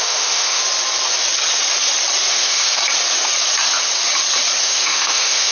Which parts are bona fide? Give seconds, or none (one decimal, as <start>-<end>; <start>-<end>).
0.6-2.3; 2.8-4.6